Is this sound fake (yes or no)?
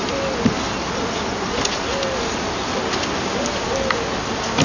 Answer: no